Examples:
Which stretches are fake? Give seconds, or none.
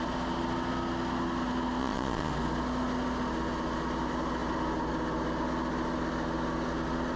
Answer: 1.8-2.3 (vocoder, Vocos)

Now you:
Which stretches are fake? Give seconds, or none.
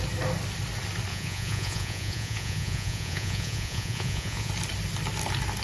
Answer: 1.1-4.5 (vocoder, Vocos)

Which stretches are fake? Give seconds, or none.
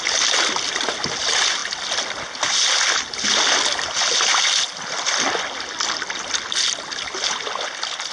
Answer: none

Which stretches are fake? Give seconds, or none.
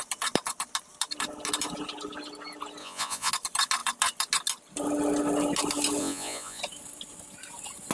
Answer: 2.8-3.3 (vocoder, Vocos); 6.0-6.6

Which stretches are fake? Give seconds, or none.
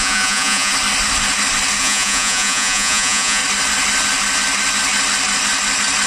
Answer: 0.0-0.7 (vocoder, Vocos); 1.8-3.4